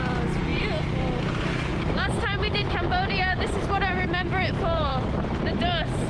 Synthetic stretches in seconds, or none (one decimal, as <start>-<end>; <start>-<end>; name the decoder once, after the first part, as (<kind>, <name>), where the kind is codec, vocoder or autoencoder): none